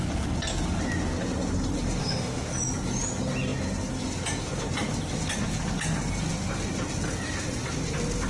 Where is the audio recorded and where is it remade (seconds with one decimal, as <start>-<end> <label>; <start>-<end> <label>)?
0.0-2.0 recorded; 2.0-2.5 remade; 2.5-8.3 recorded

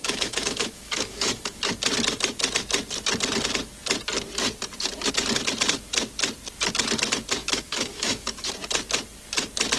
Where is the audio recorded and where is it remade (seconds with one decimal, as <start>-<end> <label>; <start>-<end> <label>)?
0.0-1.6 remade; 1.6-7.4 recorded; 7.4-8.5 remade; 8.5-9.8 recorded

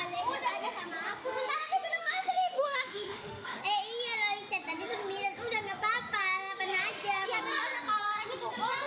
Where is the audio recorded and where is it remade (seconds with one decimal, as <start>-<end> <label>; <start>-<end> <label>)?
0.0-2.0 recorded; 2.0-3.6 remade; 3.6-8.9 recorded

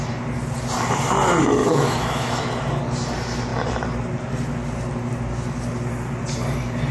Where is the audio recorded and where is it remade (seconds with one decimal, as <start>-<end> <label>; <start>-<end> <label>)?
0.0-1.6 recorded; 1.6-2.4 remade; 2.4-6.9 recorded

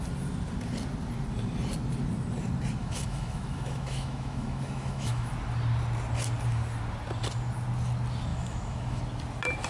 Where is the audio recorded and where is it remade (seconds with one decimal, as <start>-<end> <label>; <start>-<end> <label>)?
0.0-2.8 recorded; 2.8-5.3 remade; 5.3-8.3 recorded; 8.3-9.0 remade; 9.0-9.7 recorded

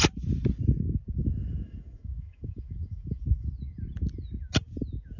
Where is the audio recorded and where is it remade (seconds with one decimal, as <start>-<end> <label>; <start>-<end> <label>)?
0.0-1.2 recorded; 1.2-3.5 remade; 3.5-5.2 recorded

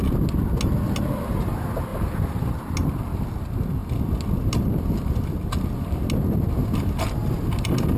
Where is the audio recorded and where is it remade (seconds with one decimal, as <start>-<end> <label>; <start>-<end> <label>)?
0.0-8.0 recorded